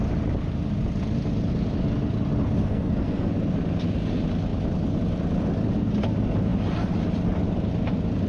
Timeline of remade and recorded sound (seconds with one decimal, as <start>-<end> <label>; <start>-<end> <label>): 0.0-2.6 recorded; 2.6-3.3 remade; 3.3-8.3 recorded